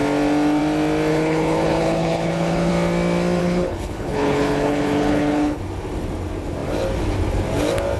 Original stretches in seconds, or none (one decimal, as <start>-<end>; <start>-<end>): 0.0-1.1; 2.7-3.4; 5.6-8.0